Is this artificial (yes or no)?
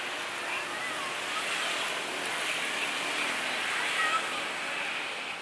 no